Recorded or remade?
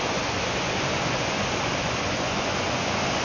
remade